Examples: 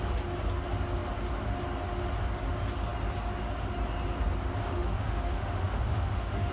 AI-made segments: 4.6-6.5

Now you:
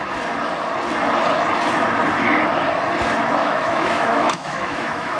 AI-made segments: 3.4-5.2

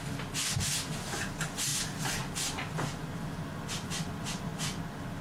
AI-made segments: none